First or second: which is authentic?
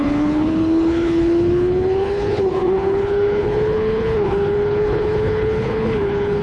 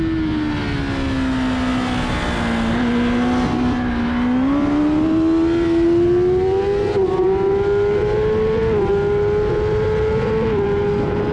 second